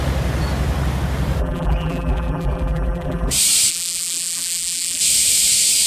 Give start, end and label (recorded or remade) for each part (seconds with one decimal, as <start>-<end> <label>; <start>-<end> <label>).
0.0-1.4 recorded; 1.4-3.3 remade; 3.3-3.7 recorded; 3.7-5.0 remade; 5.0-5.9 recorded

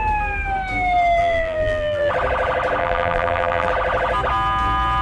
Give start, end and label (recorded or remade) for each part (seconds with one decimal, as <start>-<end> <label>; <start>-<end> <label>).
0.0-1.2 recorded; 1.2-2.1 remade; 2.1-2.8 recorded; 2.8-3.7 remade; 3.7-5.0 recorded